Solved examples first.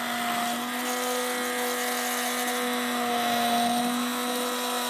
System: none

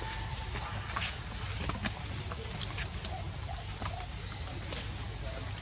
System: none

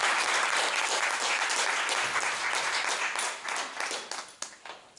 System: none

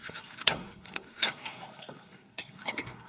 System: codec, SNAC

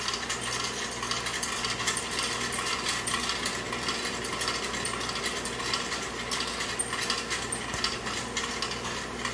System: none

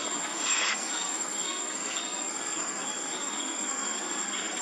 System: codec, SNAC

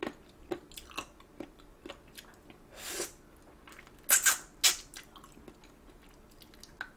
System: none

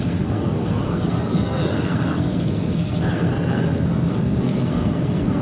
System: codec, SNAC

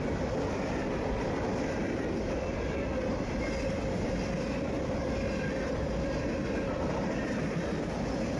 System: none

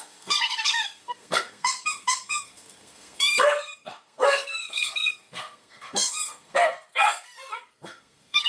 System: codec, SNAC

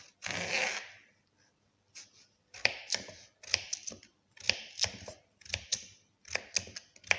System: none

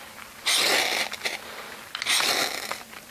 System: none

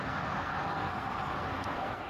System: codec, SNAC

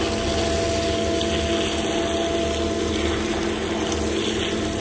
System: none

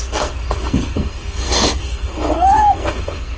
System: codec, SNAC